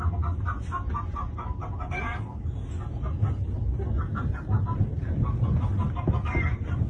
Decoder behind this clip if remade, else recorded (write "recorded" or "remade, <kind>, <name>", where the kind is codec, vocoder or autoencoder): recorded